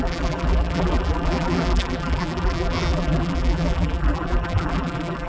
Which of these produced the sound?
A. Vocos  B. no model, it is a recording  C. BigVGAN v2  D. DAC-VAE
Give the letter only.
C